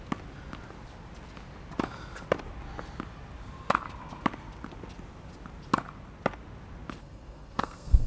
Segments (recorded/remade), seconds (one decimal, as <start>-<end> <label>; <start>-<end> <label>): 0.0-7.0 recorded; 7.0-8.1 remade